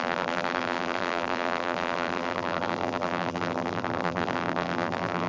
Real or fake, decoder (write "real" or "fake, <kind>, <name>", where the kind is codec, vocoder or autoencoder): fake, vocoder, BigVGAN v2